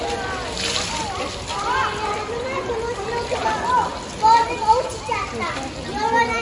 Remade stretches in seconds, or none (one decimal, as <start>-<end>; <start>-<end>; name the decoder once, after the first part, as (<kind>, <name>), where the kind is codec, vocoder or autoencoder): none